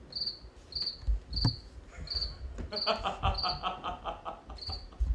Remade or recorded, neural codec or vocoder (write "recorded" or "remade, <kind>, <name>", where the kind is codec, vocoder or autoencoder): recorded